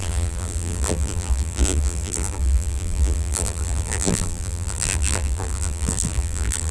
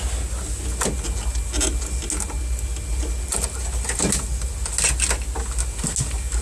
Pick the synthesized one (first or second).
first